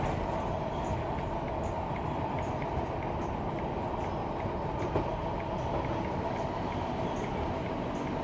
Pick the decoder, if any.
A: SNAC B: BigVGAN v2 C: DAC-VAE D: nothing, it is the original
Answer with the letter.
D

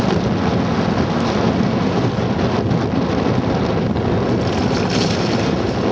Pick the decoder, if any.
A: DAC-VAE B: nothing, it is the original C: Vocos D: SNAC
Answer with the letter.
B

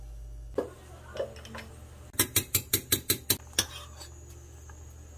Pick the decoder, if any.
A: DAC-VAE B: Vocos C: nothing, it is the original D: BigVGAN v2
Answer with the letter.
C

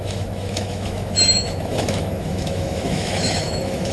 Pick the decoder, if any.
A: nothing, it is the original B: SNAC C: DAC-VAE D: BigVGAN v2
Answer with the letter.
C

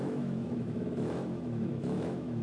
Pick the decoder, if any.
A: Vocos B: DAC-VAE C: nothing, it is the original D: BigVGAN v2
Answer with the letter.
B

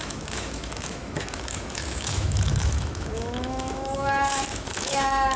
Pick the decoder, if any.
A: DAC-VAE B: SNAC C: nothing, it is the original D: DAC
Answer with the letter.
A